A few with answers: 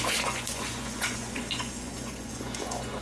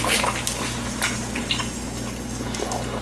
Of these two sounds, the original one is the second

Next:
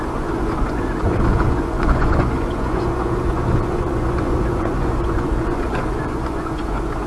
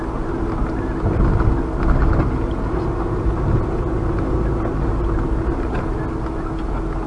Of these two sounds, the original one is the second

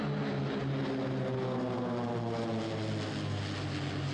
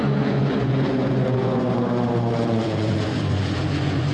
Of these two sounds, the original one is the first